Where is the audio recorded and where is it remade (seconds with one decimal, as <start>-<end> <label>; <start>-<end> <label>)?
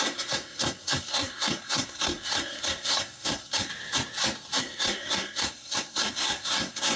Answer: 0.0-3.7 remade; 3.7-4.6 recorded; 4.6-7.0 remade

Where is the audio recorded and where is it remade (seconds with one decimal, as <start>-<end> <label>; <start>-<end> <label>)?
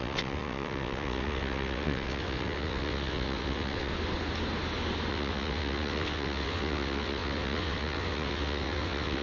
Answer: 0.0-3.9 remade; 3.9-5.1 recorded; 5.1-9.2 remade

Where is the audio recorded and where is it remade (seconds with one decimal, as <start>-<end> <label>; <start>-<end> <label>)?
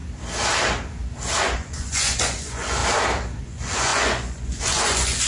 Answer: 0.0-1.4 recorded; 1.4-2.8 remade; 2.8-3.4 recorded; 3.4-5.3 remade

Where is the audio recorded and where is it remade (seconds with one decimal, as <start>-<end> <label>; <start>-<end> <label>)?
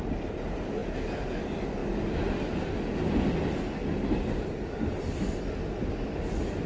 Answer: 0.0-6.7 recorded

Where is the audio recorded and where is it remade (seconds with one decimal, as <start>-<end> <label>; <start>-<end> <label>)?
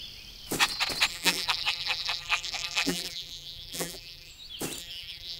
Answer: 0.0-1.1 recorded; 1.1-4.3 remade; 4.3-4.8 recorded; 4.8-5.4 remade